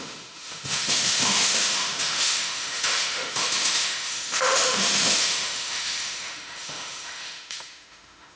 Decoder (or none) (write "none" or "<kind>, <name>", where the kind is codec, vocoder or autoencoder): autoencoder, DAC-VAE